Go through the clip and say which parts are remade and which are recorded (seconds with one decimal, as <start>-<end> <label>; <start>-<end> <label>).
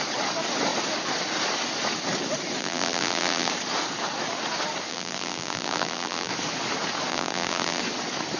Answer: 0.0-2.6 recorded; 2.6-3.5 remade; 3.5-4.9 recorded; 4.9-6.3 remade; 6.3-7.1 recorded; 7.1-7.8 remade; 7.8-8.4 recorded